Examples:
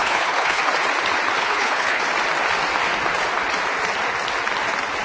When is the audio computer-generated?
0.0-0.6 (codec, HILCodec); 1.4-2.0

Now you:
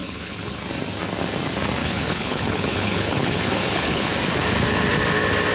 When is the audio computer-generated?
0.0-0.6 (codec, HILCodec); 1.8-4.1

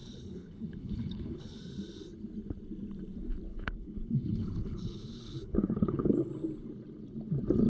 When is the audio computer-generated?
0.0-1.6 (codec, HILCodec); 3.5-6.3